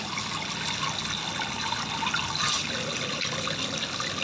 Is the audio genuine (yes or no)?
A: yes